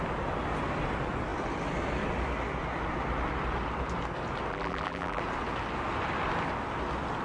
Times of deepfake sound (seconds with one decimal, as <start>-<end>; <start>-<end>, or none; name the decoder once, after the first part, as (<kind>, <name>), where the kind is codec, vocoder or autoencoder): 4.5-5.2 (vocoder, BigVGAN v2)

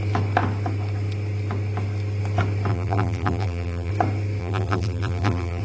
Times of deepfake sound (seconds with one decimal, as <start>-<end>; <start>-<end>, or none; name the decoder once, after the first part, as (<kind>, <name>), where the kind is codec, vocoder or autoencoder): 2.7-3.9 (vocoder, BigVGAN v2); 4.4-5.6

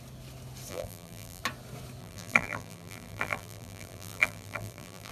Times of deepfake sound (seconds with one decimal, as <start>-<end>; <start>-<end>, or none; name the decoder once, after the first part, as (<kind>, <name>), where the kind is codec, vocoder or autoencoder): 0.7-1.4 (vocoder, BigVGAN v2); 2.0-5.1

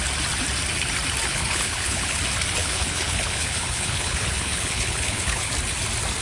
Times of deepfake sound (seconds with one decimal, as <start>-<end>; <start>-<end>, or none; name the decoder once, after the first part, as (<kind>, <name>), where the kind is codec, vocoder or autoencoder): 1.3-2.2 (codec, HILCodec); 2.6-5.5

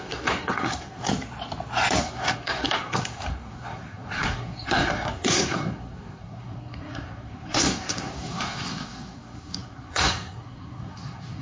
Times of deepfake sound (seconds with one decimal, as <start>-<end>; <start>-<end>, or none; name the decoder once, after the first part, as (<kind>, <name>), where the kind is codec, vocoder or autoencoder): 0.0-1.1 (codec, SNAC); 2.0-11.4

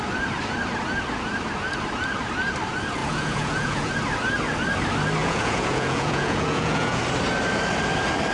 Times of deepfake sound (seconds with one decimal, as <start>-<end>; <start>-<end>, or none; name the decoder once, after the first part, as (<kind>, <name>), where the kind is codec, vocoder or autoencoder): 3.0-3.9 (vocoder, Vocos); 5.2-7.0